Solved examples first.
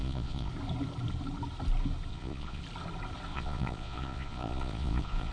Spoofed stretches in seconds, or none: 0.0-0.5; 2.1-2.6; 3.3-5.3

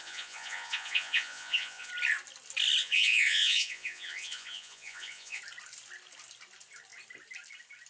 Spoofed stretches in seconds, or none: 0.0-1.9; 2.8-5.4

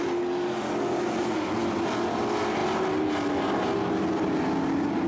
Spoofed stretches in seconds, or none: none

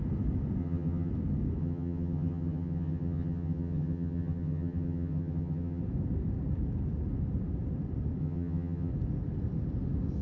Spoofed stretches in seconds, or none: 0.6-1.1; 1.6-5.8; 8.2-8.9

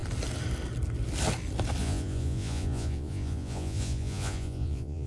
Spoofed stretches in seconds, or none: 1.8-5.1

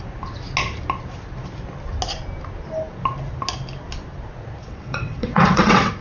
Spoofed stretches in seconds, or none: 4.6-6.0

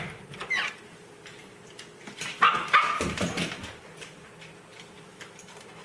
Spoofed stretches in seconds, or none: none